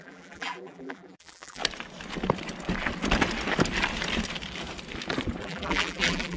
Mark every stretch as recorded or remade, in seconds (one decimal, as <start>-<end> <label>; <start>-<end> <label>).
0.0-1.6 remade; 1.6-5.4 recorded; 5.4-6.4 remade